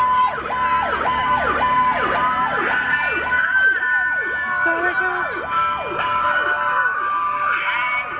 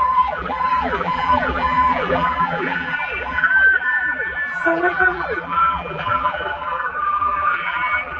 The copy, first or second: second